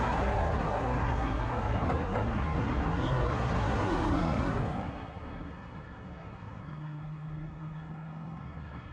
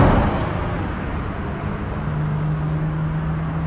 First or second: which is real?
second